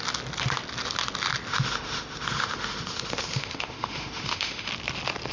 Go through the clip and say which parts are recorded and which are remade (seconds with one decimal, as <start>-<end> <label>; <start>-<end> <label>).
0.0-1.5 recorded; 1.5-4.7 remade; 4.7-5.3 recorded